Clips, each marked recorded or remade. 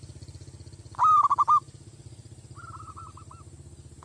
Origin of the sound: recorded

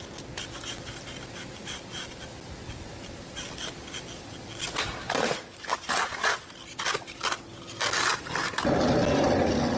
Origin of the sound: recorded